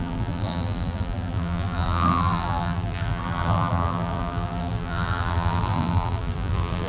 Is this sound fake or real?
fake